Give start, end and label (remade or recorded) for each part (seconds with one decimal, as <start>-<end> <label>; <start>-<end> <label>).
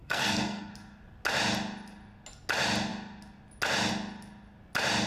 0.0-0.7 remade; 0.7-5.1 recorded